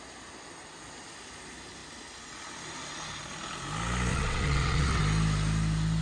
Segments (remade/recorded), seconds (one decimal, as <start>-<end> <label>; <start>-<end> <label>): 0.0-4.1 recorded; 4.1-5.0 remade; 5.0-6.0 recorded